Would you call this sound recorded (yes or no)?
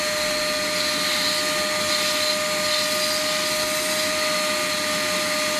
yes